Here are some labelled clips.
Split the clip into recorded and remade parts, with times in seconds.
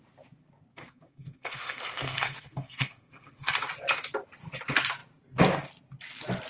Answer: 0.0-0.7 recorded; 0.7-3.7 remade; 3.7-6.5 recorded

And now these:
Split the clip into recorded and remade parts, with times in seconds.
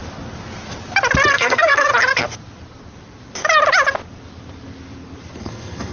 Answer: 0.0-1.3 recorded; 1.3-1.9 remade; 1.9-5.4 recorded; 5.4-5.9 remade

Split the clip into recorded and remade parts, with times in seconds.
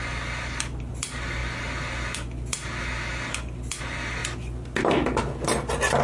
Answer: 0.0-6.0 recorded